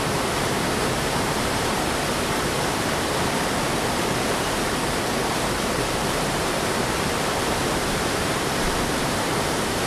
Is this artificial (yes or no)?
yes